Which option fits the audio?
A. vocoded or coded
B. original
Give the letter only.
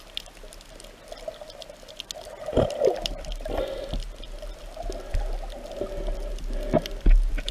B